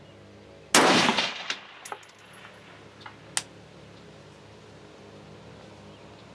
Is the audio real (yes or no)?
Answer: yes